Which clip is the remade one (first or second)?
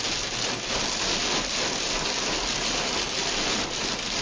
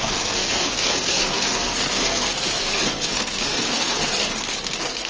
second